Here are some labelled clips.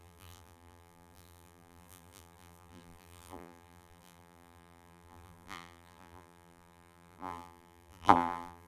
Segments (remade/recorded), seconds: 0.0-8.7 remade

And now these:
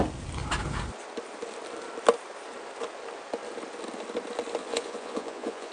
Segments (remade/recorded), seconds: 0.0-4.6 recorded; 4.6-5.7 remade

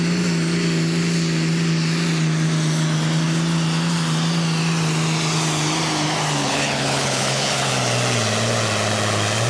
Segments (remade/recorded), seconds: 0.0-6.4 recorded; 6.4-7.7 remade; 7.7-9.5 recorded

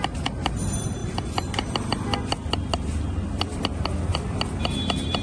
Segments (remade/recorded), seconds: 0.0-5.2 recorded